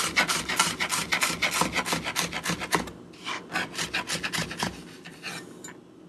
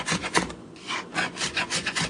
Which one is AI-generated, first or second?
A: second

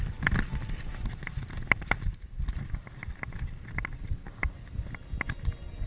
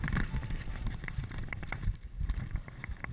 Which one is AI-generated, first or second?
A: second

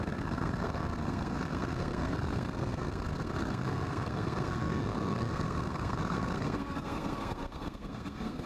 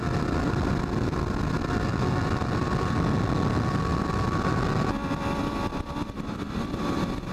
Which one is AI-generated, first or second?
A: first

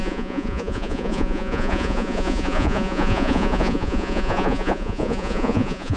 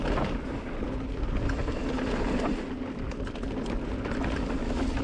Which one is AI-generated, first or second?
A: first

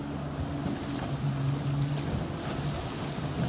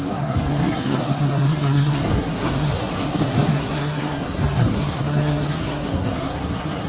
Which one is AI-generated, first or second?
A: second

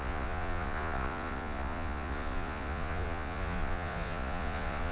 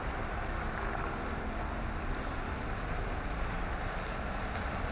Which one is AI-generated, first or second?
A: first